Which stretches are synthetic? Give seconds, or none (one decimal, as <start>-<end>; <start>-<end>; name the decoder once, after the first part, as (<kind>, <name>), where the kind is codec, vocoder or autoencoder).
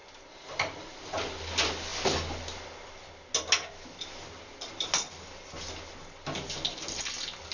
none